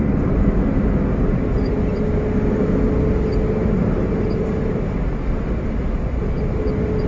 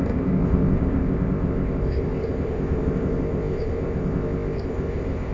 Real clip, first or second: first